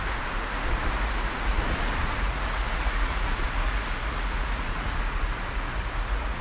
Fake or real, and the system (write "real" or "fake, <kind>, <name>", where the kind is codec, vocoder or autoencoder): fake, vocoder, Vocos